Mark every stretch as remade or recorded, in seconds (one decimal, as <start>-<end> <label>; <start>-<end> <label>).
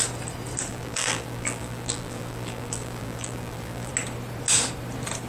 0.0-0.7 recorded; 0.7-3.9 remade; 3.9-5.3 recorded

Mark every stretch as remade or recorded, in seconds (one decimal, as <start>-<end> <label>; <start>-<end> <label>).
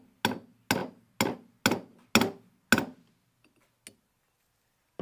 0.0-5.0 recorded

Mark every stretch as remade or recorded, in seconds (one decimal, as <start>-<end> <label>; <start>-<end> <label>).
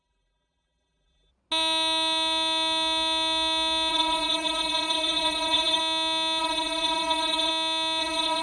0.0-1.3 remade; 1.3-3.9 recorded; 3.9-5.8 remade; 5.8-6.4 recorded; 6.4-7.5 remade; 7.5-8.0 recorded; 8.0-8.4 remade